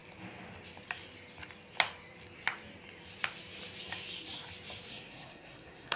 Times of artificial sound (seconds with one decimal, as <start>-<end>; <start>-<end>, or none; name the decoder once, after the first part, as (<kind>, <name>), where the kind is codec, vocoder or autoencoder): 4.9-6.0 (codec, SNAC)